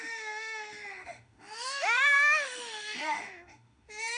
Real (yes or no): no